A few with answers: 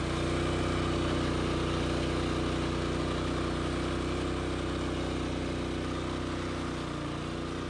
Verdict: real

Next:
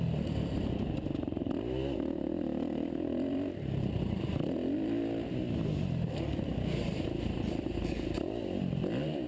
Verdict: fake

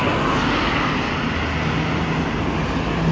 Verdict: real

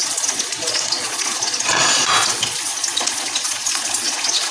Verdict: fake